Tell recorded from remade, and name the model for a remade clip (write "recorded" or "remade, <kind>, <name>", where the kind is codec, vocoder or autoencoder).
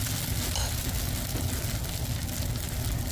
recorded